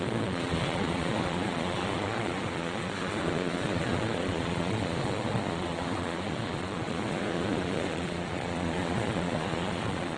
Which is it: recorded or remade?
remade